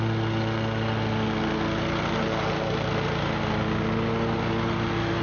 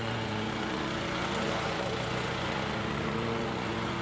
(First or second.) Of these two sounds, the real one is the first